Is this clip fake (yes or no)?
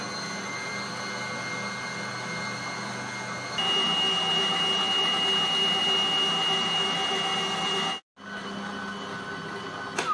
no